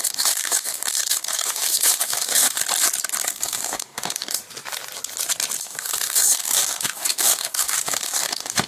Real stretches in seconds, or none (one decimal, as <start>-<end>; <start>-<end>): 2.6-3.3; 4.4-5.6